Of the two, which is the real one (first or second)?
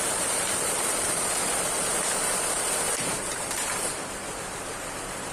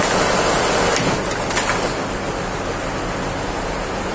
second